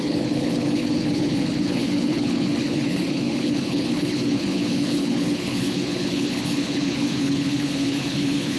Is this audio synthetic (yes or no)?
yes